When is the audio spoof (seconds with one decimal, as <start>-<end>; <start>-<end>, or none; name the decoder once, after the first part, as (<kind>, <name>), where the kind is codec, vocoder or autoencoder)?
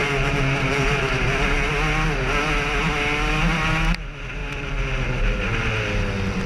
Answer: 0.0-1.7 (vocoder, BigVGAN v2); 4.4-5.7